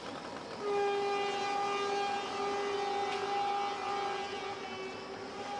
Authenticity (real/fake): real